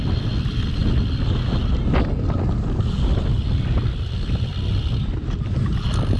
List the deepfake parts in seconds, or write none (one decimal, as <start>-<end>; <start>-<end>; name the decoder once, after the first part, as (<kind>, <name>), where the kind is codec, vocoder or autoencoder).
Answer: none